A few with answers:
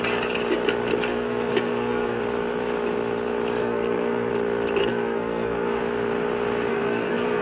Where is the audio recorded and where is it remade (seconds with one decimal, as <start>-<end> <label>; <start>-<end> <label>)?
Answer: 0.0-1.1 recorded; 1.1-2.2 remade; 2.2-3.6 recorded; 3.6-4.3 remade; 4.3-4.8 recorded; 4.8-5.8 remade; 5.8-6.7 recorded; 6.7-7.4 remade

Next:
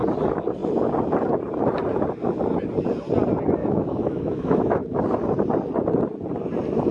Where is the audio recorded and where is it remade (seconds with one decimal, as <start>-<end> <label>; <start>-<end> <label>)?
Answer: 0.0-3.6 recorded; 3.6-5.0 remade; 5.0-6.9 recorded

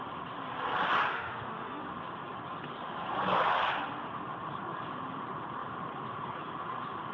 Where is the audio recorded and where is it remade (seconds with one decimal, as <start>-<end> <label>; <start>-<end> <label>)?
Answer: 0.0-1.1 recorded; 1.1-1.8 remade; 1.8-7.1 recorded